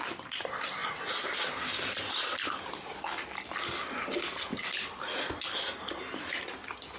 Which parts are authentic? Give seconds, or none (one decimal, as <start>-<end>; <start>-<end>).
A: 0.0-4.5; 6.5-7.0